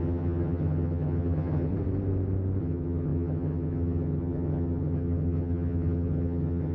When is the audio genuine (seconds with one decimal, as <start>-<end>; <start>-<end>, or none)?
1.7-2.6